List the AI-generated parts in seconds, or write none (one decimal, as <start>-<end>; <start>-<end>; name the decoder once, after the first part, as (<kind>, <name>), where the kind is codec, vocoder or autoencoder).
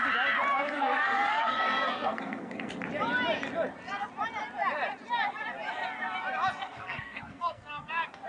0.5-2.7 (codec, SNAC); 6.6-7.9